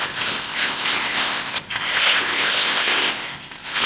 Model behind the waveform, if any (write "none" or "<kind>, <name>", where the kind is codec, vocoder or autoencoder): codec, ZipCodec